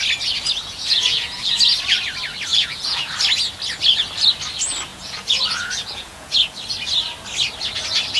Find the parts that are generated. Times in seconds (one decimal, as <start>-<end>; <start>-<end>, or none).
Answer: 0.6-1.6; 2.5-3.1; 4.9-6.5